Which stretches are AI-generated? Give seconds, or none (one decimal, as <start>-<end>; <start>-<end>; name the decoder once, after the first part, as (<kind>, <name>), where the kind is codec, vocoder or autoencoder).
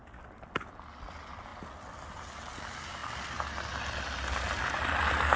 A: none